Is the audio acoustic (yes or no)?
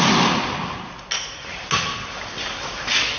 yes